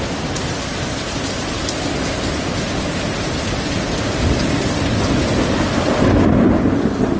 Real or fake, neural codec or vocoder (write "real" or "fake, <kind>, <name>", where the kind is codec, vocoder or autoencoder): real